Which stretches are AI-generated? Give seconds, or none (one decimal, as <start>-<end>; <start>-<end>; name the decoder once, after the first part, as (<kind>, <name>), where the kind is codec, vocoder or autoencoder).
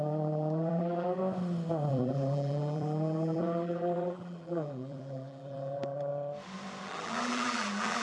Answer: 0.0-1.2 (vocoder, BigVGAN v2); 1.9-6.1; 6.8-8.0